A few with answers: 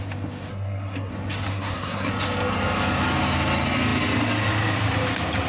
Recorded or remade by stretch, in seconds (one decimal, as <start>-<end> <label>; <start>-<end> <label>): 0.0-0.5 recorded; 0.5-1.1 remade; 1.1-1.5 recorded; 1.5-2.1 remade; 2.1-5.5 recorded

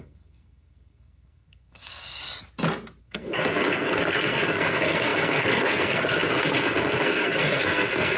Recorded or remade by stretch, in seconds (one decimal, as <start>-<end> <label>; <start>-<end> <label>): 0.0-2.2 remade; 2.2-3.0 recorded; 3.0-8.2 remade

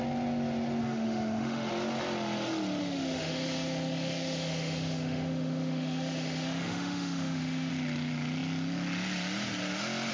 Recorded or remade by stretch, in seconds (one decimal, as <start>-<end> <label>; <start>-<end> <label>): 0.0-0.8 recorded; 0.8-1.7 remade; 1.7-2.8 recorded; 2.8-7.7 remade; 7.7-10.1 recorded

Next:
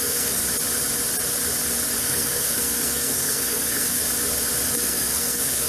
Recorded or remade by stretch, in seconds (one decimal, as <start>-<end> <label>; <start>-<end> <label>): 0.0-0.4 remade; 0.4-2.0 recorded; 2.0-4.0 remade; 4.0-4.7 recorded; 4.7-5.7 remade

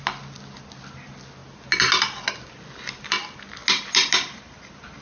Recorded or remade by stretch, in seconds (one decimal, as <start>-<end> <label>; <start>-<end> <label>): 0.0-5.0 recorded

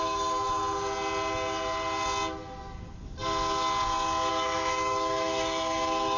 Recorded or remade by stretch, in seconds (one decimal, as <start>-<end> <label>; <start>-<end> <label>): 0.0-0.6 remade; 0.6-4.3 recorded; 4.3-6.2 remade

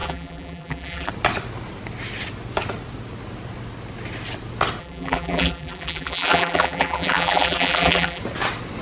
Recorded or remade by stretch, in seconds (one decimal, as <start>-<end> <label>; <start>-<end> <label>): 0.0-1.1 remade; 1.1-4.8 recorded; 4.8-8.2 remade; 8.2-8.8 recorded

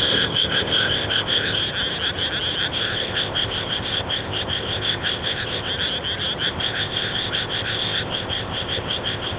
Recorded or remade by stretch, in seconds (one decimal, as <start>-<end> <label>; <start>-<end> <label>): 0.0-1.6 remade; 1.6-2.7 recorded; 2.7-5.7 remade; 5.7-6.5 recorded; 6.5-9.4 remade